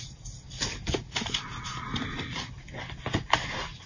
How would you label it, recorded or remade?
recorded